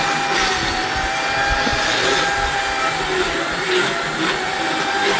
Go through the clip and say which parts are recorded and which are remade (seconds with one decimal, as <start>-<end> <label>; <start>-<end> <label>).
0.0-5.2 recorded